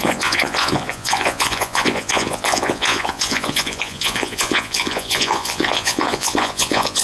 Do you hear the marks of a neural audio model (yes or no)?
yes